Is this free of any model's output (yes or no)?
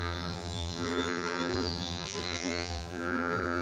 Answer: no